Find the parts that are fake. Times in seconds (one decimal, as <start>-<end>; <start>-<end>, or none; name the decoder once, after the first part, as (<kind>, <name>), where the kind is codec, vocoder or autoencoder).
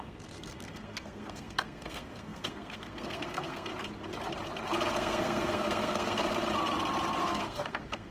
0.0-3.7 (codec, SNAC); 4.9-6.2; 7.2-8.1